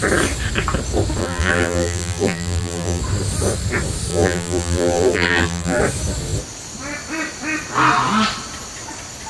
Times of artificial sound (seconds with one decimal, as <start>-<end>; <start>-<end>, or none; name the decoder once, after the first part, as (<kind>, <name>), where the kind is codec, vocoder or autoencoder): 1.2-3.0 (vocoder, BigVGAN v2); 4.1-5.8